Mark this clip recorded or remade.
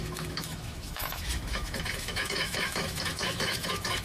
remade